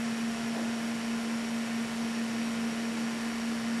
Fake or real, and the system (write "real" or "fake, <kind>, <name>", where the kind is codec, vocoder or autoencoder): real